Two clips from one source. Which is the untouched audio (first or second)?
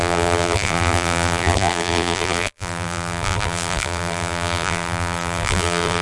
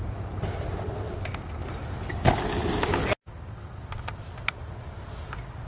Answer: second